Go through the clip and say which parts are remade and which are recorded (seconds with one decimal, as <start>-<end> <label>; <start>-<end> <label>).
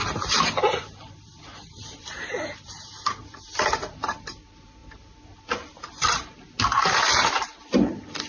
0.0-4.1 remade; 4.1-8.3 recorded